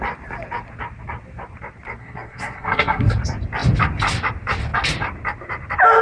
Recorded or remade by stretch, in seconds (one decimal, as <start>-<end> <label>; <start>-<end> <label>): 0.0-2.0 recorded; 2.0-3.1 remade; 3.1-6.0 recorded